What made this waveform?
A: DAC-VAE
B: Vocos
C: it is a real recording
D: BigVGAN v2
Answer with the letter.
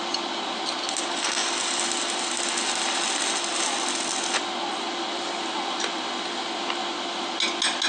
C